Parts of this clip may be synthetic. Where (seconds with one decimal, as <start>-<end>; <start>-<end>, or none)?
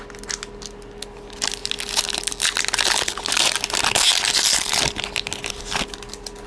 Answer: none